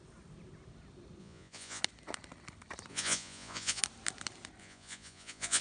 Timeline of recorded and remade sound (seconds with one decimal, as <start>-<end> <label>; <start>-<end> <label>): 0.0-1.2 recorded; 1.2-1.8 remade; 1.8-2.9 recorded; 2.9-3.8 remade; 3.8-4.6 recorded; 4.6-5.6 remade